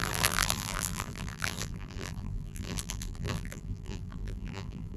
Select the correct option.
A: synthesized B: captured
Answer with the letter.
A